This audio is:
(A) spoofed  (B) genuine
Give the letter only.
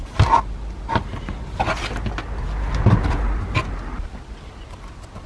B